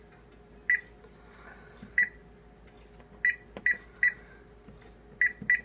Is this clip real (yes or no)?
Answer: yes